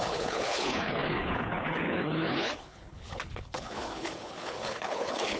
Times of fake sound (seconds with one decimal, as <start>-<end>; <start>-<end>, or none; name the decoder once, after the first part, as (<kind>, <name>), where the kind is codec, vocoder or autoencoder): 0.0-5.4 (codec, HILCodec)